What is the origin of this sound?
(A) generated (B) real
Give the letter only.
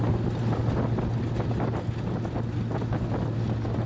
B